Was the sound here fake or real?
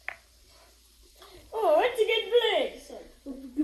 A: real